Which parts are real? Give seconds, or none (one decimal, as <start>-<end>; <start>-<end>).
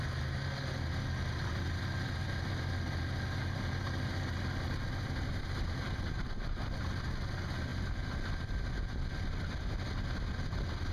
0.0-10.9